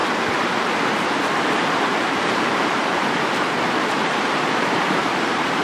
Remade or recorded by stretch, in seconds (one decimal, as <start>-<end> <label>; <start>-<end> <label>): 0.0-1.9 recorded; 1.9-5.6 remade

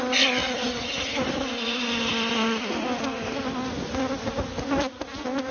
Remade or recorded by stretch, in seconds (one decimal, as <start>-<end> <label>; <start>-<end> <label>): 0.0-5.5 recorded

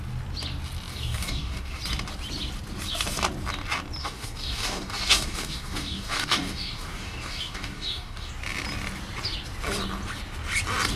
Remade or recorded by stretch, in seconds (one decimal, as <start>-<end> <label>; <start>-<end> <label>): 0.0-0.9 recorded; 0.9-1.8 remade; 1.8-4.0 recorded; 4.0-8.3 remade; 8.3-11.0 recorded

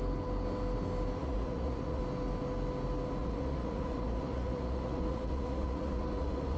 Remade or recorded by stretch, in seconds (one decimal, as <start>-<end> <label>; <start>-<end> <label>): 0.0-1.2 recorded; 1.2-2.0 remade; 2.0-3.2 recorded; 3.2-6.6 remade

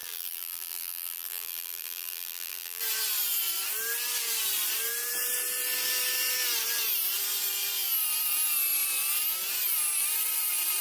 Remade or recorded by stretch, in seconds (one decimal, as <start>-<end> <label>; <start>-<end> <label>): 0.0-2.8 remade; 2.8-10.8 recorded

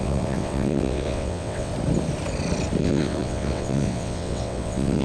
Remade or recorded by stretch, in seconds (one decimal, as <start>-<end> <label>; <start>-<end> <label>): 0.0-1.7 remade; 1.7-2.8 recorded; 2.8-5.0 remade

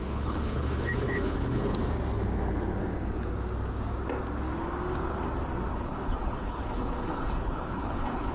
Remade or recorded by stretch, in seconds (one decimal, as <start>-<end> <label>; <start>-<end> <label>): 0.0-1.8 remade; 1.8-5.7 recorded; 5.7-8.3 remade

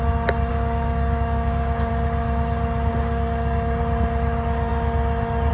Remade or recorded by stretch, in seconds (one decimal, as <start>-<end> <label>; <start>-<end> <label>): 0.0-0.5 recorded; 0.5-1.9 remade; 1.9-2.9 recorded; 2.9-3.8 remade; 3.8-5.5 recorded